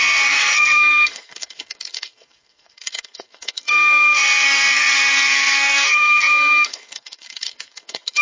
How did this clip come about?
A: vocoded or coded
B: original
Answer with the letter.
A